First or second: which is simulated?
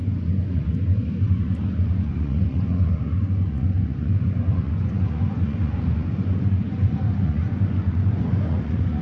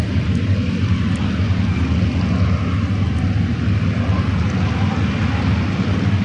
first